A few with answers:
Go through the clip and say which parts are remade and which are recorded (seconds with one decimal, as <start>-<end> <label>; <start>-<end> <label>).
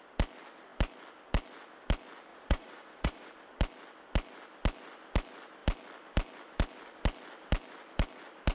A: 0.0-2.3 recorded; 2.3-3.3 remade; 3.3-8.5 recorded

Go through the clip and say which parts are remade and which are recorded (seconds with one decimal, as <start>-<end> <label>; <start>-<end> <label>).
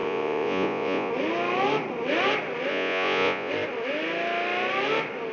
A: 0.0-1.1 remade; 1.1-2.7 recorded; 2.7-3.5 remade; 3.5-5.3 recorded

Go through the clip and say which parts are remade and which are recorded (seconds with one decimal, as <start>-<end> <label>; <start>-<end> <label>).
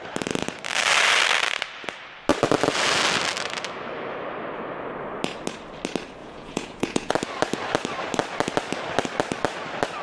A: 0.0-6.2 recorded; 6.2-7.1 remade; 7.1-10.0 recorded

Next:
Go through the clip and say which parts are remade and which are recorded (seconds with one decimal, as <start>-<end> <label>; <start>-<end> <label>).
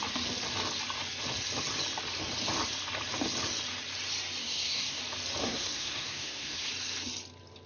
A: 0.0-4.4 recorded; 4.4-5.0 remade; 5.0-5.4 recorded; 5.4-6.7 remade; 6.7-7.7 recorded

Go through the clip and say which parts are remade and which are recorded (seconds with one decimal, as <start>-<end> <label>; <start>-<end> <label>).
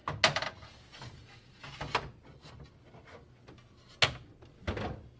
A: 0.0-5.2 recorded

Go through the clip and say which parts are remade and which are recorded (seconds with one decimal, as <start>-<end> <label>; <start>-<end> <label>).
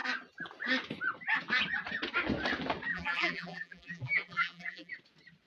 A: 0.0-2.9 recorded; 2.9-4.9 remade; 4.9-5.5 recorded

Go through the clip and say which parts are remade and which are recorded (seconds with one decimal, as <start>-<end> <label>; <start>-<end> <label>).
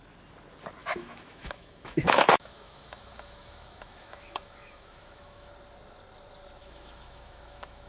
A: 0.0-0.8 recorded; 0.8-5.5 remade; 5.5-6.6 recorded; 6.6-7.9 remade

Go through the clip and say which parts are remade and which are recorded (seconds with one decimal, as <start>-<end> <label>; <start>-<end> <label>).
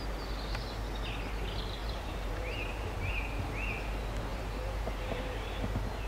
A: 0.0-1.8 recorded; 1.8-3.1 remade; 3.1-4.3 recorded; 4.3-5.2 remade; 5.2-6.1 recorded